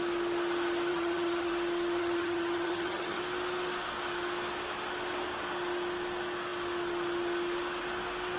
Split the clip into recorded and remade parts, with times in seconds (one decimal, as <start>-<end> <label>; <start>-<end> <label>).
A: 0.0-0.9 recorded; 0.9-1.5 remade; 1.5-2.0 recorded; 2.0-3.2 remade; 3.2-8.4 recorded